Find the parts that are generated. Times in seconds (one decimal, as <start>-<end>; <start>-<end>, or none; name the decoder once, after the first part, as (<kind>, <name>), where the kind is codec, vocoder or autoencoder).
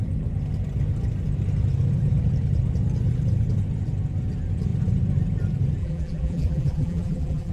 5.8-7.5 (vocoder, BigVGAN v2)